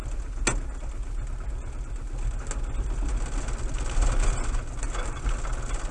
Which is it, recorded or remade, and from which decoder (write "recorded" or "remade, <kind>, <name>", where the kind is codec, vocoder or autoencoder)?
recorded